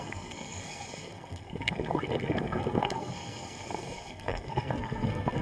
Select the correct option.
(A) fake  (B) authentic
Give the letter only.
A